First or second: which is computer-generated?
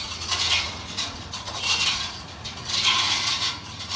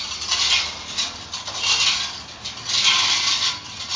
first